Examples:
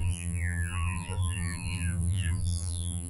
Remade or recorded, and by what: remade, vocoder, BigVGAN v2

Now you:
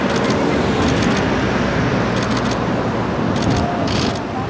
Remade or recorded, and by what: recorded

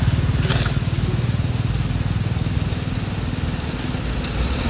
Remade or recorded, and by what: recorded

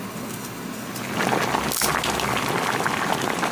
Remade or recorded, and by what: recorded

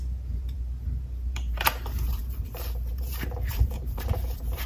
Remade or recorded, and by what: remade, vocoder, BigVGAN v2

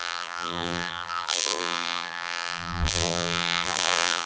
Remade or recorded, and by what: remade, vocoder, BigVGAN v2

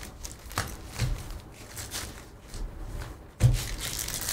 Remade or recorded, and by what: recorded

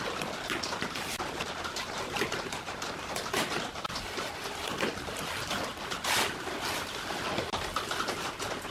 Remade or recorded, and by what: recorded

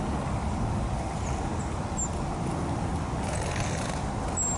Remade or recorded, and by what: recorded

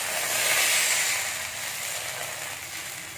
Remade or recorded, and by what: recorded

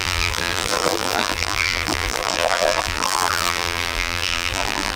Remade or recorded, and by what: remade, vocoder, BigVGAN v2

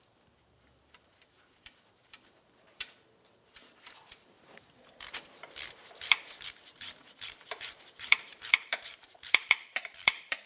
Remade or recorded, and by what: remade, vocoder, BigVGAN v2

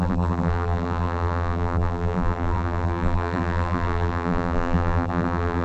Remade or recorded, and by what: remade, vocoder, BigVGAN v2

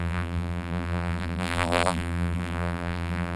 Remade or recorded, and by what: remade, vocoder, BigVGAN v2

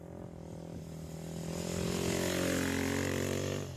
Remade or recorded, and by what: recorded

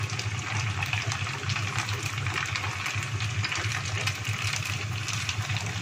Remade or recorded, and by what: recorded